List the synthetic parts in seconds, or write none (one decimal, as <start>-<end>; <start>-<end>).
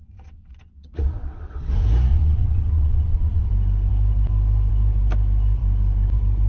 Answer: 0.0-1.7; 2.1-3.5